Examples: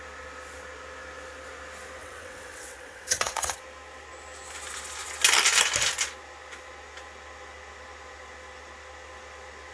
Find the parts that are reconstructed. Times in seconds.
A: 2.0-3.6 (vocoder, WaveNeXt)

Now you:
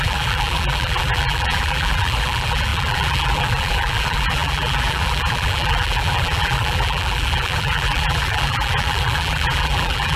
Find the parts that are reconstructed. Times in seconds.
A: 0.0-10.2 (vocoder, BigVGAN v2)

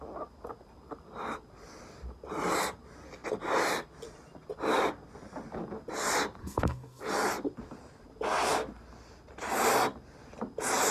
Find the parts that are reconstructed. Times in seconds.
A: 6.4-7.0 (codec, SNAC)

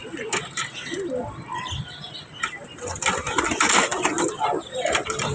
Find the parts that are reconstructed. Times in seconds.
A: none